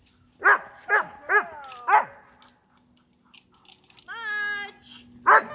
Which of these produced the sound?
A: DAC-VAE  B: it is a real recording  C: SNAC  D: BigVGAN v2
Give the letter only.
B